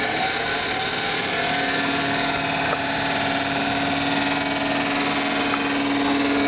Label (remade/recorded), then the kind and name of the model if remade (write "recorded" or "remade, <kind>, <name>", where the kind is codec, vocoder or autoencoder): recorded